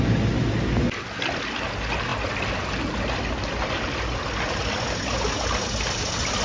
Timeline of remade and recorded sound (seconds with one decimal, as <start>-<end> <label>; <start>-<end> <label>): 0.0-6.4 recorded